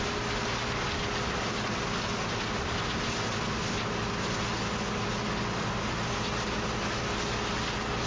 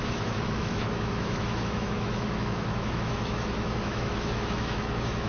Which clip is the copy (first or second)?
second